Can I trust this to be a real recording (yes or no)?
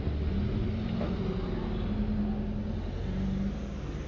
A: yes